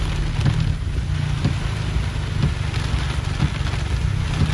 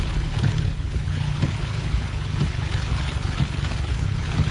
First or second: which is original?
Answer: first